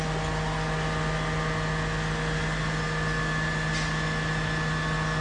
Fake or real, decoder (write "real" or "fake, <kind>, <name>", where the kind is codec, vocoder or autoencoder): real